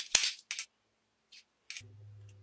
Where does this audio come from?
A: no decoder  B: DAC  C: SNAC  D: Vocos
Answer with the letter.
A